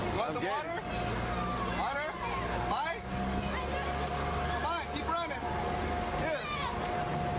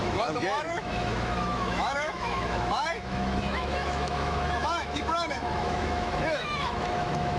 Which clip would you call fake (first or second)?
second